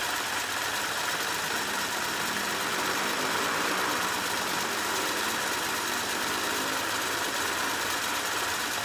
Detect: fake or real fake